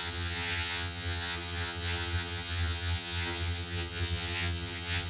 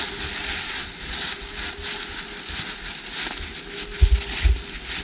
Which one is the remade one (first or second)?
first